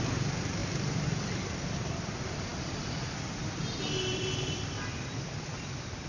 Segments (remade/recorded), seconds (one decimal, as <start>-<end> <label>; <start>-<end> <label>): 0.0-6.1 remade